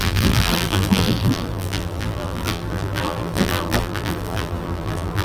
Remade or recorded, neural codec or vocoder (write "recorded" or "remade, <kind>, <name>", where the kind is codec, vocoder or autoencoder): remade, vocoder, BigVGAN v2